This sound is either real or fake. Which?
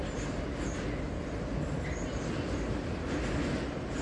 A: real